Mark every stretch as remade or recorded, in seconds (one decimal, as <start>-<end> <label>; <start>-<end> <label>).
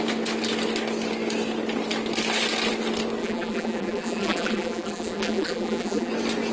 0.0-3.2 recorded; 3.2-6.1 remade; 6.1-6.5 recorded